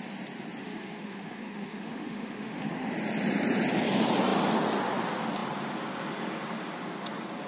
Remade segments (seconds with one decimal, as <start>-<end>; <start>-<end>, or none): 0.6-2.9

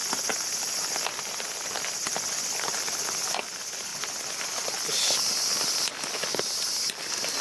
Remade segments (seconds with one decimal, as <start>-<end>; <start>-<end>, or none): none

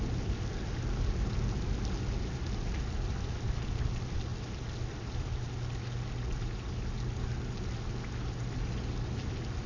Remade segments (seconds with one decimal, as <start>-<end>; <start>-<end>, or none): none

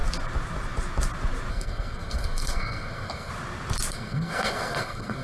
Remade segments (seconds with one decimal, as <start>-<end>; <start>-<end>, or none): 1.5-3.3; 3.9-5.2

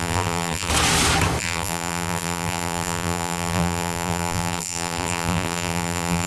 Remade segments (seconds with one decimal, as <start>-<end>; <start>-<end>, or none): 0.0-0.7; 1.4-6.3

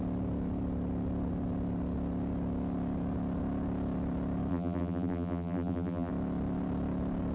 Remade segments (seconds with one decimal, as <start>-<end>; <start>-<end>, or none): 4.5-6.1